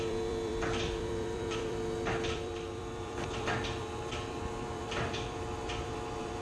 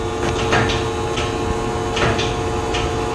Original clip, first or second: second